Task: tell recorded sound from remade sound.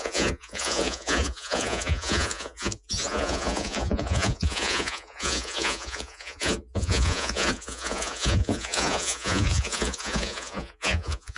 remade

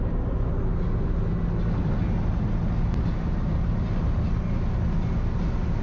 recorded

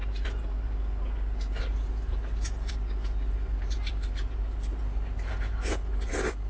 recorded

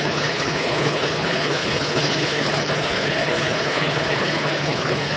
remade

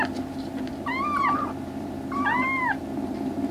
recorded